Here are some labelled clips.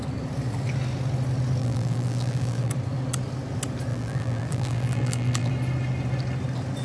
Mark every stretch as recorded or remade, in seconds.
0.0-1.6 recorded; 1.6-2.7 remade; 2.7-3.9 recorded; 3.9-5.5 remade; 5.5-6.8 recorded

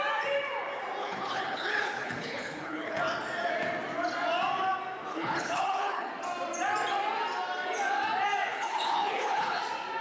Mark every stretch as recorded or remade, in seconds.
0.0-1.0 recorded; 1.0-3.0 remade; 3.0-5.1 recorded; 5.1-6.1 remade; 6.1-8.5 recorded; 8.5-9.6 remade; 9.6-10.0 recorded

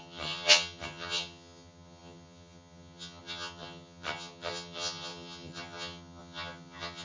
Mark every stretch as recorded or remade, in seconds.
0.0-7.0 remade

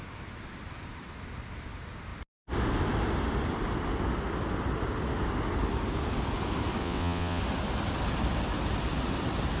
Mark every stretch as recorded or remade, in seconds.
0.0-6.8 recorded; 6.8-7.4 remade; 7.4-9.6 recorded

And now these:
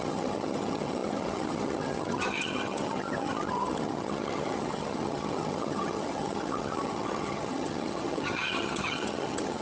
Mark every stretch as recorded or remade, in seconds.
0.0-9.6 remade

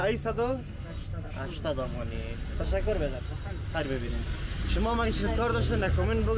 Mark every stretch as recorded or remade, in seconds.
0.0-6.4 recorded